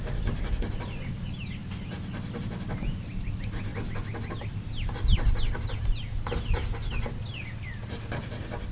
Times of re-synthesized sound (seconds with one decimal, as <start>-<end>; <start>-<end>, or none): none